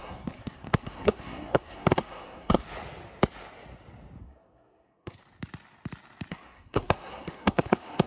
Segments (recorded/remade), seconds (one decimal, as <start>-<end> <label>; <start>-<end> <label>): 0.0-2.6 remade; 2.6-4.2 recorded; 4.2-5.2 remade; 5.2-6.3 recorded; 6.3-8.1 remade